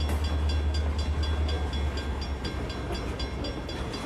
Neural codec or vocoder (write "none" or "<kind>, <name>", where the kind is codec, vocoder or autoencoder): none